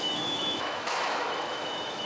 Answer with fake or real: fake